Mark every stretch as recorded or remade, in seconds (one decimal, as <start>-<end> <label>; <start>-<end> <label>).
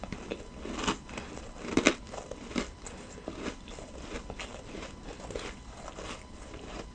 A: 0.0-1.4 recorded; 1.4-6.9 remade